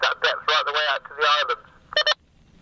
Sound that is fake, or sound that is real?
real